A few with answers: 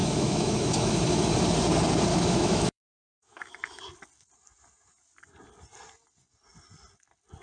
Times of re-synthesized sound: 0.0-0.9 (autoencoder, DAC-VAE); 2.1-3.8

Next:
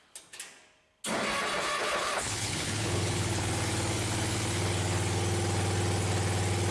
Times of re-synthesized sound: 1.8-3.5 (codec, HILCodec)

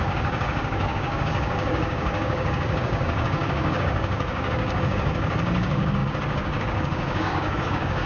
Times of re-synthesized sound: 0.0-8.1 (codec, DAC)

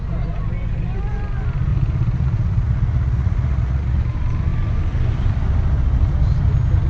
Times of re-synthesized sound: 1.7-4.0 (vocoder, Vocos)

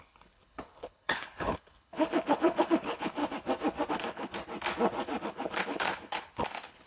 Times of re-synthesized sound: 0.0-3.2 (codec, HILCodec); 3.9-4.3; 5.2-6.9